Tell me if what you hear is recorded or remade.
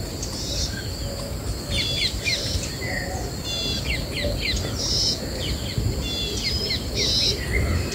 recorded